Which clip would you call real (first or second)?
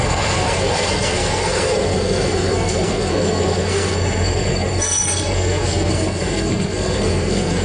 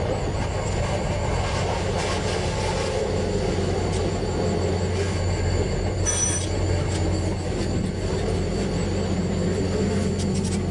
second